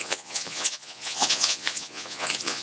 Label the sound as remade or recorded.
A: remade